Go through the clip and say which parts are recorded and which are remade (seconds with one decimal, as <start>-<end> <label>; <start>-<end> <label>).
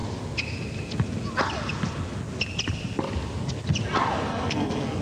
0.0-4.3 recorded; 4.3-5.0 remade